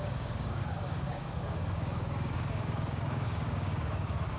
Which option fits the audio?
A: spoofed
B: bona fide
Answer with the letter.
A